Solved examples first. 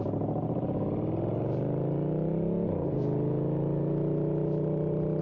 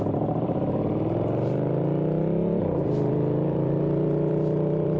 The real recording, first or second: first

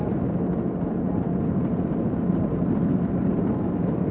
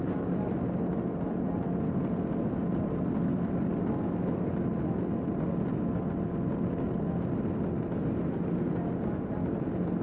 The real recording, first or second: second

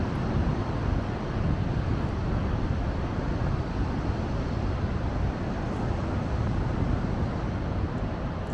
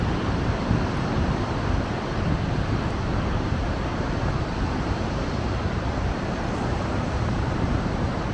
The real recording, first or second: first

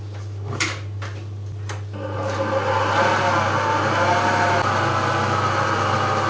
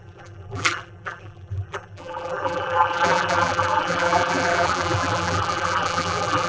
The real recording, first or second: first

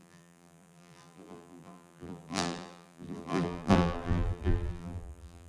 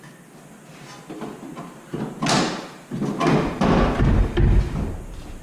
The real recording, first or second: second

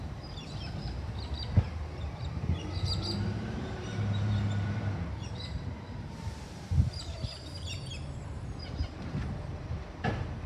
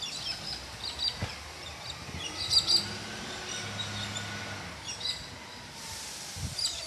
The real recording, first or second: second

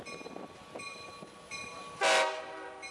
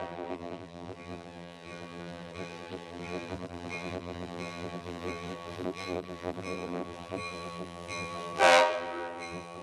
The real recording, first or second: first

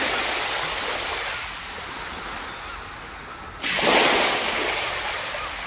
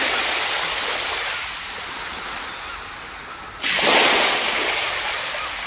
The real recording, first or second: first